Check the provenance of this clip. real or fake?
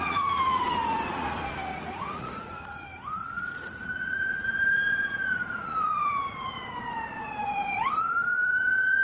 fake